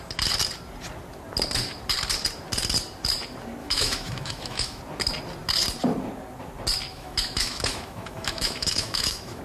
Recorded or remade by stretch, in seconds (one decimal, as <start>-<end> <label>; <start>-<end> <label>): 0.0-3.6 recorded; 3.6-4.8 remade; 4.8-6.9 recorded; 6.9-9.4 remade

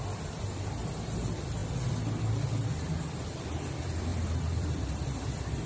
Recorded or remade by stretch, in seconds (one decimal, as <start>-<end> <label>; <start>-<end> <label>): 0.0-1.6 remade; 1.6-2.9 recorded; 2.9-5.7 remade

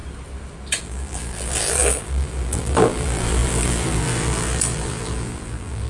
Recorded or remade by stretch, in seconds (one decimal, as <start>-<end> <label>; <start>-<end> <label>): 0.0-0.8 recorded; 0.8-5.9 remade

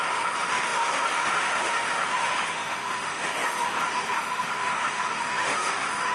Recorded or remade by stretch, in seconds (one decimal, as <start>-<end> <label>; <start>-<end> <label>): 0.0-6.1 remade

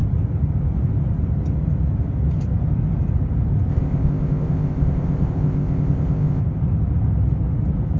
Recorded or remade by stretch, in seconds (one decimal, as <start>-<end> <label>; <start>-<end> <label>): 0.0-3.7 recorded; 3.7-6.4 remade; 6.4-8.0 recorded

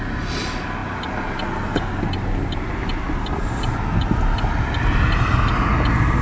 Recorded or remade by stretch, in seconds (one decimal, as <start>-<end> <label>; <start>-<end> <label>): 0.0-6.2 recorded